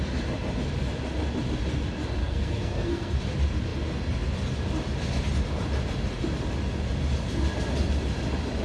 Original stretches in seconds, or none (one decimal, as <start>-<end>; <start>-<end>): 0.0-2.2; 3.2-8.6